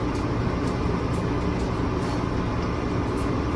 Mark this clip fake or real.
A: real